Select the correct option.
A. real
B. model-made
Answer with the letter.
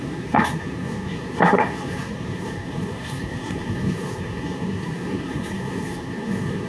B